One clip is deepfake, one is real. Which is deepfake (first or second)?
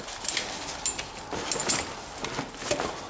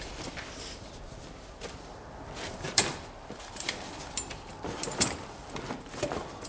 second